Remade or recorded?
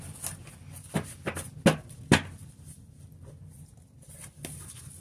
recorded